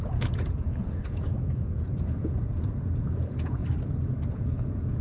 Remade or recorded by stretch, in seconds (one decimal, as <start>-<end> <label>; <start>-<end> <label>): 0.0-3.6 remade; 3.6-4.3 recorded; 4.3-5.0 remade